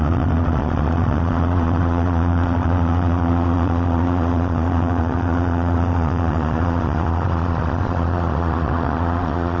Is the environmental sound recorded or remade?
remade